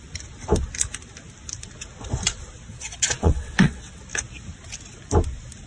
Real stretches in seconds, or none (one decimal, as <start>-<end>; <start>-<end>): 0.0-2.7; 4.0-5.7